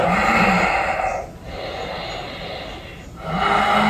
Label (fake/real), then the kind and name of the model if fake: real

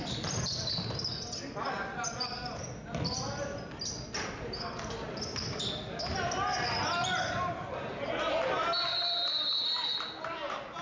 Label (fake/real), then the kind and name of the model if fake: real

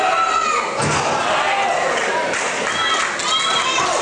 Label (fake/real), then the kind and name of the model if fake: real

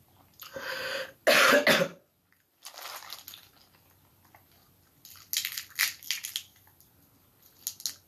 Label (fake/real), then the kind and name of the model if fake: real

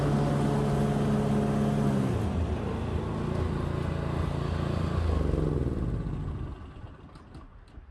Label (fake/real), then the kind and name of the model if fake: real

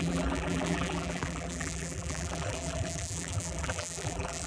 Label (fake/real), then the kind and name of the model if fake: fake, vocoder, BigVGAN v2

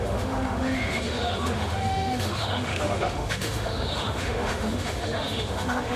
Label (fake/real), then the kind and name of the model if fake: fake, autoencoder, DAC-VAE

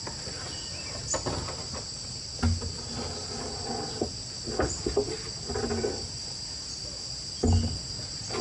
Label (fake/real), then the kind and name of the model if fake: real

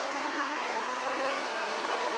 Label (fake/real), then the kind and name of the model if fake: fake, codec, SNAC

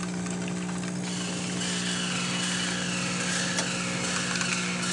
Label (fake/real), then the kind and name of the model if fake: real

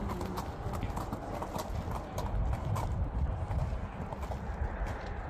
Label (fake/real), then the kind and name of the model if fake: real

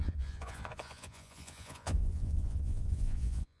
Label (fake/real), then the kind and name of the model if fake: fake, vocoder, Vocos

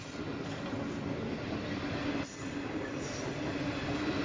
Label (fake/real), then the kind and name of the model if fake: real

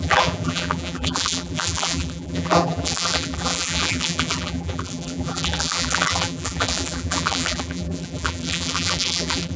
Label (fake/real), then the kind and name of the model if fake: fake, vocoder, BigVGAN v2